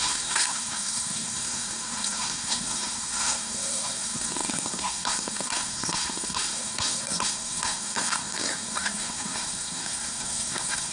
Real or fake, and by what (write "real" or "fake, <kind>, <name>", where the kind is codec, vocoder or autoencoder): fake, codec, SNAC